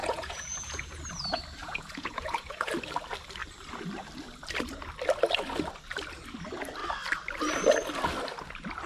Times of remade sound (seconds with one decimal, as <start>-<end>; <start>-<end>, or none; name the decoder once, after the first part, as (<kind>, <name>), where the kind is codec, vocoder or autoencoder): 0.0-1.0 (vocoder, Vocos); 1.6-2.7